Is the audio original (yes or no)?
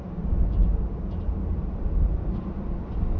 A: yes